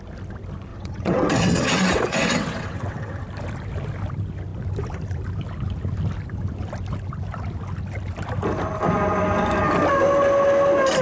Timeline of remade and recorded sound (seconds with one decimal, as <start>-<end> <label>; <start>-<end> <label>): 0.0-0.7 recorded; 0.7-3.2 remade; 3.2-11.0 recorded